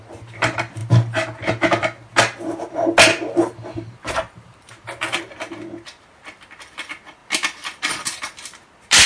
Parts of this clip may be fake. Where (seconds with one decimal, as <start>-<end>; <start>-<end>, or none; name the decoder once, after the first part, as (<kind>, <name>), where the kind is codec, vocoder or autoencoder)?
4.0-5.2 (vocoder, BigVGAN v2)

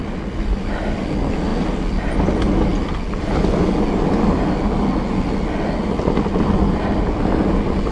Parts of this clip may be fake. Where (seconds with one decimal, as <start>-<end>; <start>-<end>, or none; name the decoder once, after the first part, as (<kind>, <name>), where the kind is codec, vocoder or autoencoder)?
none